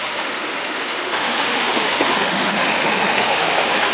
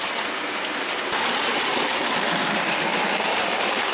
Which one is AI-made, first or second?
first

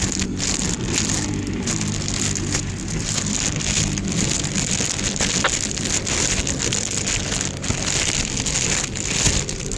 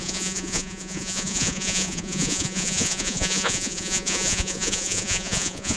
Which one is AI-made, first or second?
second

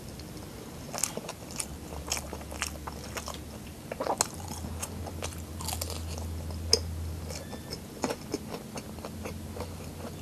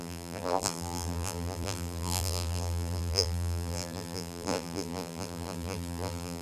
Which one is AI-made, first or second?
second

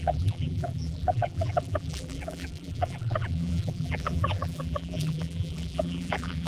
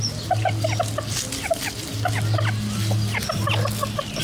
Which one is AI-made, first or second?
first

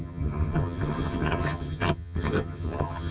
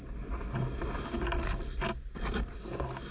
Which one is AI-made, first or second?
first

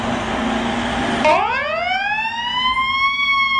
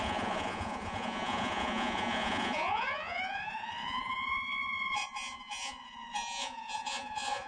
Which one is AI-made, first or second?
second